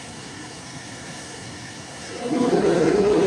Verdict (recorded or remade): remade